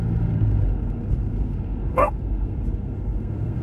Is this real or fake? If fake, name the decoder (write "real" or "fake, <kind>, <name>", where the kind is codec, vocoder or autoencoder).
fake, codec, SNAC